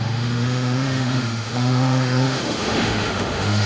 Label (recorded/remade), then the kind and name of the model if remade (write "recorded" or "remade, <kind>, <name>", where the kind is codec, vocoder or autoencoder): remade, autoencoder, DAC-VAE